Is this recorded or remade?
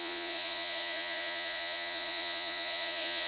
remade